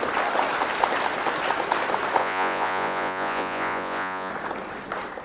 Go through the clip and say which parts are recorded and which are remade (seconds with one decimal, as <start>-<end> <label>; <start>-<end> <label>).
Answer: 0.0-2.2 recorded; 2.2-4.3 remade; 4.3-5.2 recorded